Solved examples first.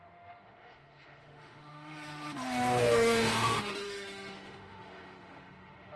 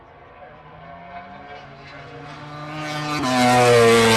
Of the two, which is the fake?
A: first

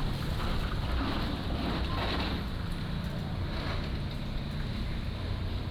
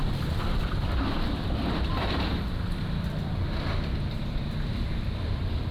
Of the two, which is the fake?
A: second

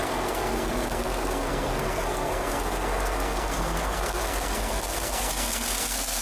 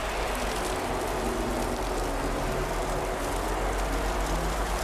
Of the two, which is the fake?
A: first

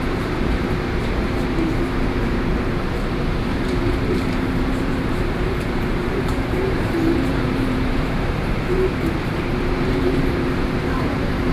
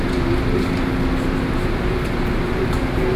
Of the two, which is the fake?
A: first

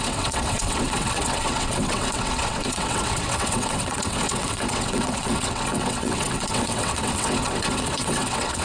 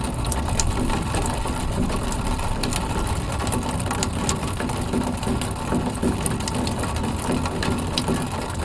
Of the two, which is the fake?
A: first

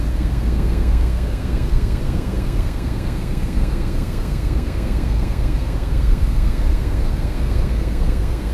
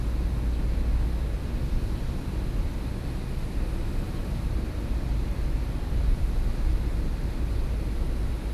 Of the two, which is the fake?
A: first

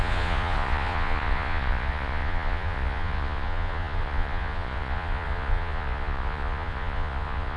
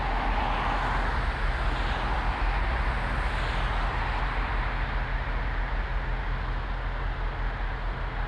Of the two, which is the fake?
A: first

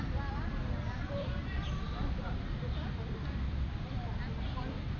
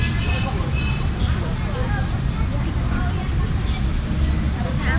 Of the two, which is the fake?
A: first